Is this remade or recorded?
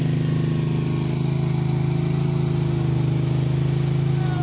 recorded